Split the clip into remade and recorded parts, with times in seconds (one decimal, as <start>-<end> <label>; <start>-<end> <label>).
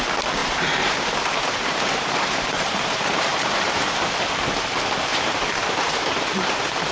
0.0-0.4 recorded; 0.4-4.3 remade; 4.3-5.1 recorded; 5.1-6.9 remade